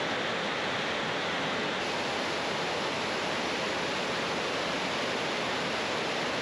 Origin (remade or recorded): recorded